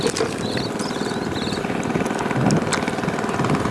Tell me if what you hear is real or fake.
real